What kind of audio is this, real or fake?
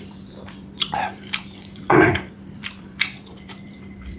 fake